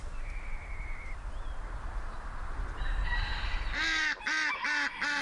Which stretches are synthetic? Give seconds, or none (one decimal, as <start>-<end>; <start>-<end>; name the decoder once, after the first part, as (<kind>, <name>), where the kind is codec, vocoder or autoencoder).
none